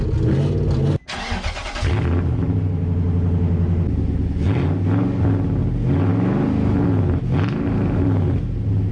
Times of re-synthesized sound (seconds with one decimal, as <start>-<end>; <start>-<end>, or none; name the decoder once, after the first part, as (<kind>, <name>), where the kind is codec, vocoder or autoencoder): none